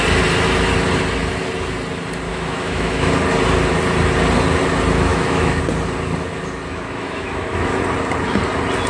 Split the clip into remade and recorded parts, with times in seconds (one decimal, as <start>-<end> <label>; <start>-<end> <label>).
0.0-2.3 recorded; 2.3-3.1 remade; 3.1-5.1 recorded; 5.1-5.6 remade; 5.6-6.7 recorded; 6.7-7.8 remade; 7.8-8.9 recorded